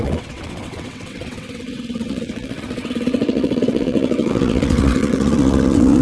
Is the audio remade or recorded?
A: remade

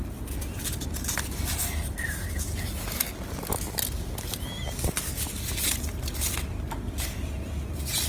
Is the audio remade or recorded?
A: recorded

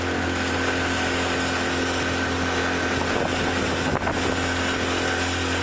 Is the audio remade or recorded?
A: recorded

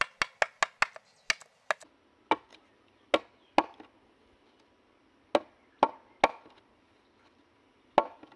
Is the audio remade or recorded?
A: recorded